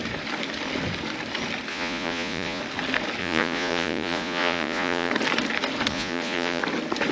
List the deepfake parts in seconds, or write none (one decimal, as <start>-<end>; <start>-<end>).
1.7-2.6; 3.2-5.1; 5.9-6.6